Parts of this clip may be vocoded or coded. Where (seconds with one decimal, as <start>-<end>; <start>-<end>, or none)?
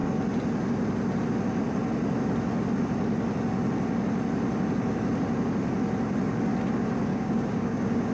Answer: 7.1-8.1